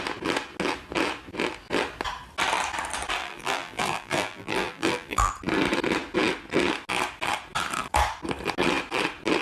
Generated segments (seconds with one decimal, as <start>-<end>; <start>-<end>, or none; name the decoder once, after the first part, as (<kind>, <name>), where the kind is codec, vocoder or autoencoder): 3.2-5.3 (vocoder, BigVGAN v2)